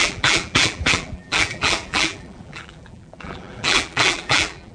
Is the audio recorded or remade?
remade